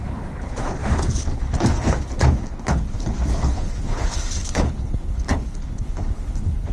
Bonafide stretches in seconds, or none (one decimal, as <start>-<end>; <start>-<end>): none